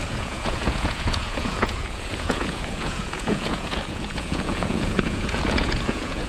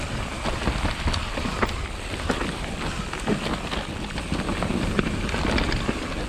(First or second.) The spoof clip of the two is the first